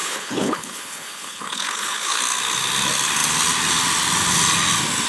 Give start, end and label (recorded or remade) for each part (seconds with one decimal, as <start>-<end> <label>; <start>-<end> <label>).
0.0-2.2 remade; 2.2-5.1 recorded